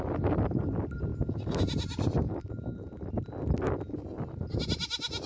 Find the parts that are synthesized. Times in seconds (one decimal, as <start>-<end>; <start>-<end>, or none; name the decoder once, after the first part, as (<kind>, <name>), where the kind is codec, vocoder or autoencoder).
none